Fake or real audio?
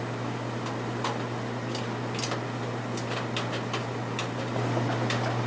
real